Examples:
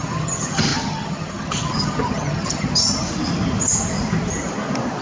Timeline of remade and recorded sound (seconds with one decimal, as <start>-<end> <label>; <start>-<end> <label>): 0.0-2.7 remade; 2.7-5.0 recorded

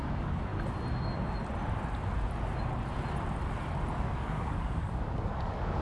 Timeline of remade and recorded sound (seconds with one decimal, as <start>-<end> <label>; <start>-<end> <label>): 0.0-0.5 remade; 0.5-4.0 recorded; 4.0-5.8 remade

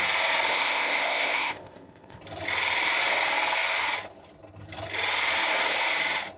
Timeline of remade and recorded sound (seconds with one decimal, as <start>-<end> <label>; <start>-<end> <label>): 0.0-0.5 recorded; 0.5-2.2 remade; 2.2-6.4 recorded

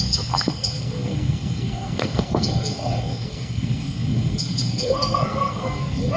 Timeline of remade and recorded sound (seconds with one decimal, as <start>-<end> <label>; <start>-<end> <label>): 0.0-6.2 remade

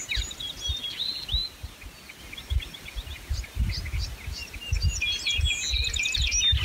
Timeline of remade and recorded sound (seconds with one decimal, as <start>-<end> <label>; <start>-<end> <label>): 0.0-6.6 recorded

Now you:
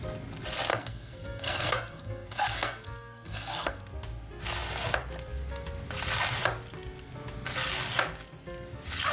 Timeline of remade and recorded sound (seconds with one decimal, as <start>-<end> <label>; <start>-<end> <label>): 0.0-0.7 recorded; 0.7-3.8 remade; 3.8-9.1 recorded

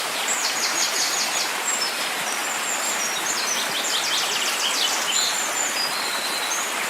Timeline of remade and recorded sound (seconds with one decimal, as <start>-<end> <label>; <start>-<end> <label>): 0.0-2.4 remade; 2.4-6.5 recorded; 6.5-6.9 remade